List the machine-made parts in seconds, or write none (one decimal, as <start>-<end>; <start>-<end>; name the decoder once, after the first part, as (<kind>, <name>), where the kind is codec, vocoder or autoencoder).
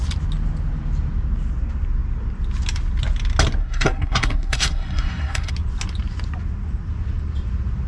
3.6-5.5 (codec, SNAC)